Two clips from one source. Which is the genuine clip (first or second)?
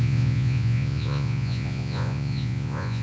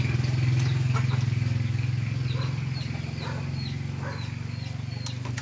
second